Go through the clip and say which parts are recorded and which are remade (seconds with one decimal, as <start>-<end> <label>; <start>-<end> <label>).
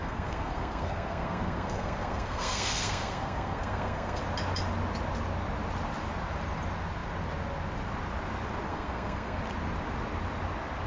0.0-4.2 remade; 4.2-8.7 recorded; 8.7-9.4 remade; 9.4-10.9 recorded